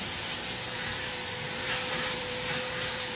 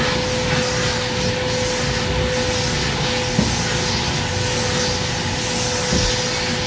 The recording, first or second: second